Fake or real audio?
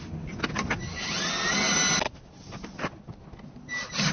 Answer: real